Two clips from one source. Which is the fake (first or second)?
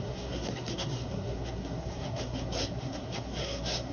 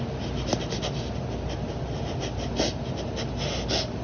first